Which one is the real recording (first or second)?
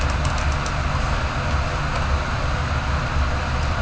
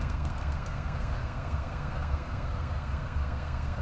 first